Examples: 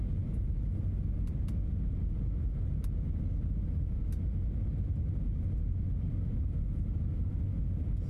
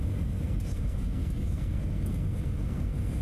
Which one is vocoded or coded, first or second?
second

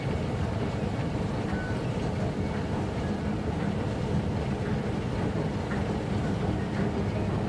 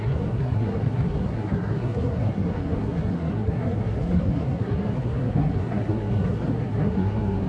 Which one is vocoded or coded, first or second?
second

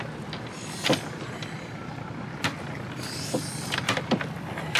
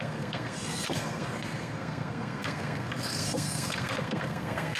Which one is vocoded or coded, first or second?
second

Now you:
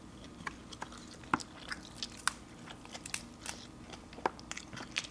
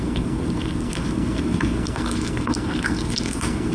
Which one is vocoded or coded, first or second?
second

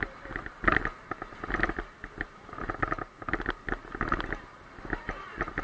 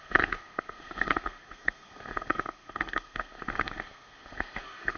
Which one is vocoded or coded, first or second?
second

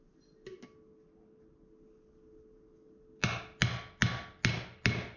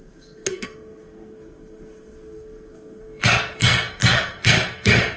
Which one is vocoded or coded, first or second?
second